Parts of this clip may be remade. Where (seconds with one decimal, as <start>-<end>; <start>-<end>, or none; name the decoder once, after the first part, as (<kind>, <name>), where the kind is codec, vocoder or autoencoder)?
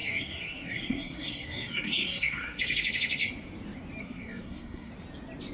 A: 0.0-3.3 (codec, SNAC); 4.0-4.9